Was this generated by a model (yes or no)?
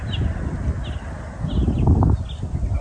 no